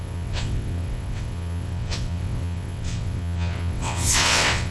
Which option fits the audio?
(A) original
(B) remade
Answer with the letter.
B